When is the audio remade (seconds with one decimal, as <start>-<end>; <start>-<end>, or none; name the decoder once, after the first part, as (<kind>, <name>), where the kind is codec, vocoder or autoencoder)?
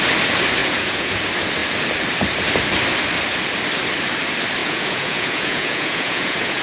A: 0.6-1.2 (vocoder, Vocos); 4.6-6.6